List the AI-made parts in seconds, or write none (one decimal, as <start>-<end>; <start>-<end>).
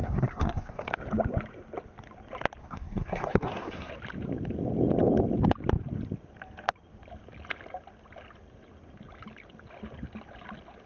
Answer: 0.0-0.9; 2.6-3.9